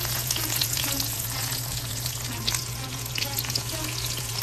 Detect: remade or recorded remade